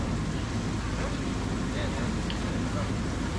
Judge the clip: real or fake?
real